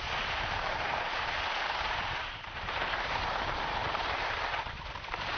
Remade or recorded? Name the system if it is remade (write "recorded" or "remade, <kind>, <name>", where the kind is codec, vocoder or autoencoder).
remade, vocoder, BigVGAN v2